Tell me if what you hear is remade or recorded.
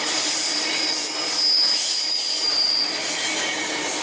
recorded